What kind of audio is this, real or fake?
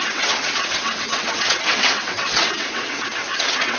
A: fake